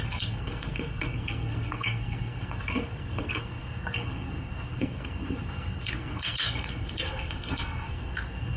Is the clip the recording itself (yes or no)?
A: no